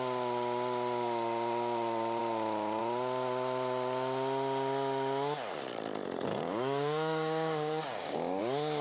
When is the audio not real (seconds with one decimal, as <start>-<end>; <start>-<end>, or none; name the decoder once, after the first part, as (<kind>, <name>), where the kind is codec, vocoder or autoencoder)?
6.3-8.4 (codec, DAC)